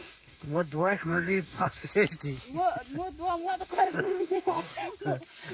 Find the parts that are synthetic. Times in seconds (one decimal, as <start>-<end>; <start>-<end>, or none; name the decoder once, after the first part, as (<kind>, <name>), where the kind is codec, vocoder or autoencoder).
0.0-1.9 (codec, DAC); 3.4-4.7